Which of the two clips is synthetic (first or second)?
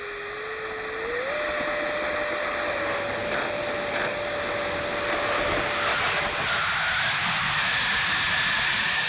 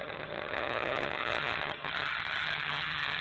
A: second